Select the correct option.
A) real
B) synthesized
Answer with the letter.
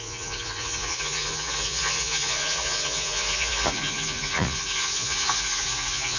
B